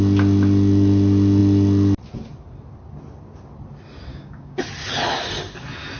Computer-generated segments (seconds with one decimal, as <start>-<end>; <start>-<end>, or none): 4.1-4.6